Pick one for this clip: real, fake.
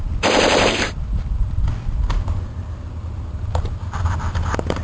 fake